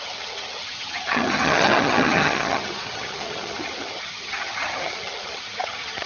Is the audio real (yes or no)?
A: no